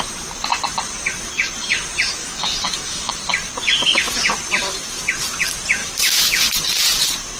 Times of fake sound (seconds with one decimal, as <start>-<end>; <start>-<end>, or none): 2.2-3.1; 5.8-6.5